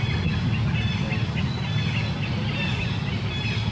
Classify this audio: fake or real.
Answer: real